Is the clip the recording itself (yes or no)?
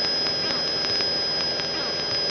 yes